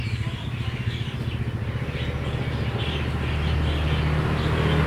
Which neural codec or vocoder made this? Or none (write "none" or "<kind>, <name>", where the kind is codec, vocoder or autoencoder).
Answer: none